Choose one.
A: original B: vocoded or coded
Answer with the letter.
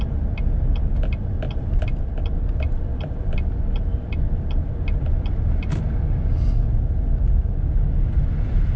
A